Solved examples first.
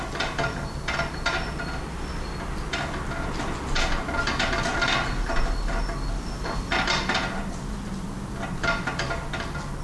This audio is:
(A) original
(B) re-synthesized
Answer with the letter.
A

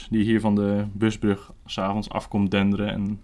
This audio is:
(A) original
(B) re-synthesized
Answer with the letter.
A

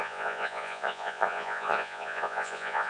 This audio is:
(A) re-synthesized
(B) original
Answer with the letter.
A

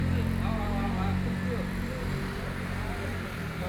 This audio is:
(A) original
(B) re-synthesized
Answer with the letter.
A